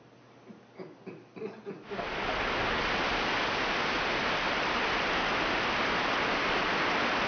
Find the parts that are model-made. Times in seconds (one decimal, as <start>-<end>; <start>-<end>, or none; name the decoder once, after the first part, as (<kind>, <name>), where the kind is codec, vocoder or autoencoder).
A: 5.3-6.1 (vocoder, BigVGAN v2)